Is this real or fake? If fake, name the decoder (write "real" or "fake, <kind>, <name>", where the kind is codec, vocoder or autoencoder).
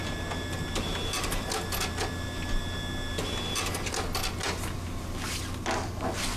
real